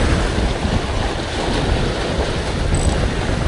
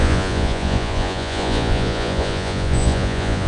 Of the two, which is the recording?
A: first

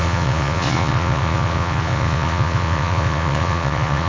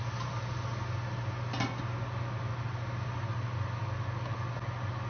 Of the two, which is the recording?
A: second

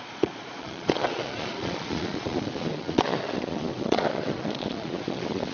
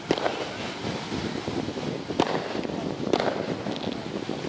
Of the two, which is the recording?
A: second